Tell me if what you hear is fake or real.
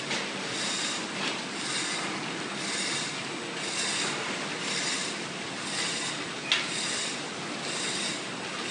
real